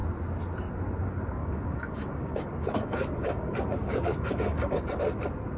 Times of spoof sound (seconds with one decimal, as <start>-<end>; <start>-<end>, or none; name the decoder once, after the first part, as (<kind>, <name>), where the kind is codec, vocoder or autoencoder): 1.4-4.8 (codec, DAC)